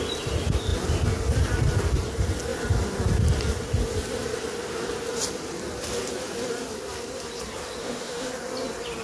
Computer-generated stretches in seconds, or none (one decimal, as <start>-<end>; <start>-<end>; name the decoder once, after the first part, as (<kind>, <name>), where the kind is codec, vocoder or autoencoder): 7.8-8.3 (autoencoder, DAC-VAE)